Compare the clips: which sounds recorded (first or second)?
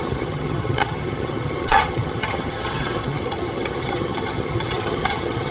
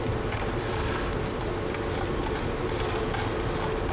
second